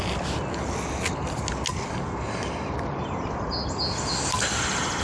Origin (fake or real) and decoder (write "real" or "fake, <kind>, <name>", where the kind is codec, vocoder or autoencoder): real